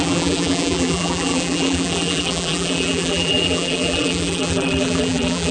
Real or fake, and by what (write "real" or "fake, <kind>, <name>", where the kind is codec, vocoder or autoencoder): fake, vocoder, BigVGAN v2